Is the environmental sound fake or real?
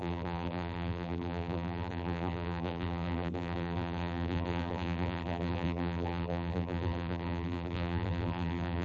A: fake